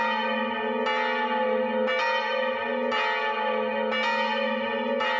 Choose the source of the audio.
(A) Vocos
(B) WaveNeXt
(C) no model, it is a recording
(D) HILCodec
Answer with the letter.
C